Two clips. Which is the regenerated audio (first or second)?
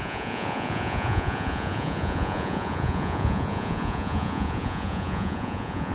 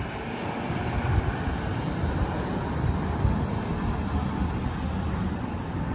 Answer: first